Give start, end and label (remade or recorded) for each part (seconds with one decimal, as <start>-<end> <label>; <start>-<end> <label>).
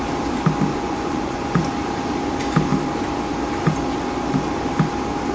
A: 0.0-0.7 recorded; 0.7-1.7 remade; 1.7-5.3 recorded